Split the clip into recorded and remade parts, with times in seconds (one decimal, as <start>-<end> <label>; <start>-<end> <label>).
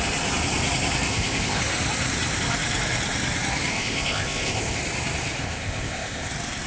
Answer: 0.0-1.1 recorded; 1.1-1.6 remade; 1.6-3.7 recorded; 3.7-4.8 remade; 4.8-5.4 recorded; 5.4-6.3 remade; 6.3-6.7 recorded